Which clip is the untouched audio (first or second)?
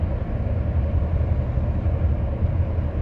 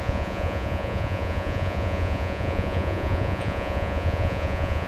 first